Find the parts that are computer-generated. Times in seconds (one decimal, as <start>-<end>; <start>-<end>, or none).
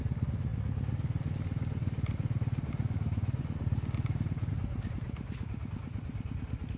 none